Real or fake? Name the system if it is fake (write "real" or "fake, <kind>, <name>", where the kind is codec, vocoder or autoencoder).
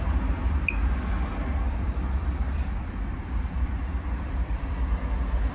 fake, vocoder, BigVGAN v2